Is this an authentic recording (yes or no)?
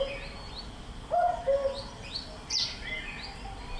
yes